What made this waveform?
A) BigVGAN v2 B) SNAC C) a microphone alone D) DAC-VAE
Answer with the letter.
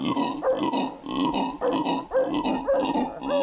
C